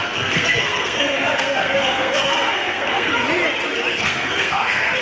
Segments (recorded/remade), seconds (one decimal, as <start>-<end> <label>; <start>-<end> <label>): 0.0-3.1 remade; 3.1-3.9 recorded; 3.9-5.0 remade